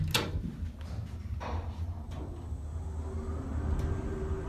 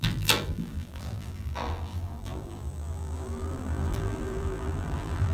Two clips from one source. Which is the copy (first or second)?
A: second